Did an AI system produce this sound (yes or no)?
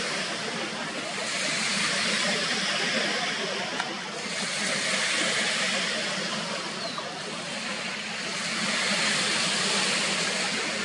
no